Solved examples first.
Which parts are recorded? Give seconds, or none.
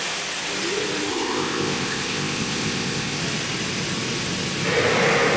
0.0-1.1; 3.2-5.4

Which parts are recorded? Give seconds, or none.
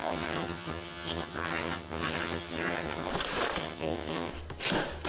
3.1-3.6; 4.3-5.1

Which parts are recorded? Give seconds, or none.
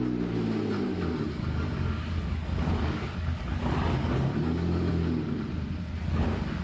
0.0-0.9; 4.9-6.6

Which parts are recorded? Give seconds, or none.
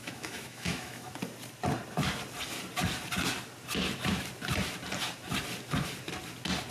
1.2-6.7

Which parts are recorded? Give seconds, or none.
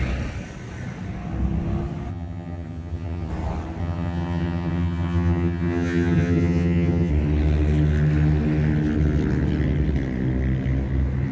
0.0-2.1; 3.3-3.8; 7.1-11.3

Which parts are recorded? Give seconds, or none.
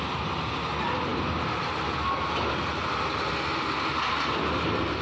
0.0-5.0